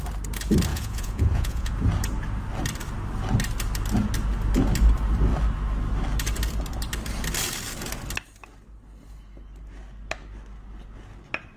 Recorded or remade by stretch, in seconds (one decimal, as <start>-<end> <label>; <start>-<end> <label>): 0.0-0.7 recorded; 0.7-1.7 remade; 1.7-11.6 recorded